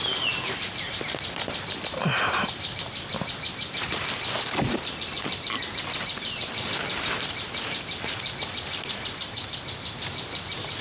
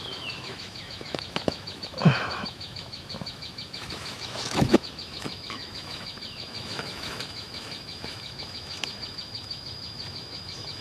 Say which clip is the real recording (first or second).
first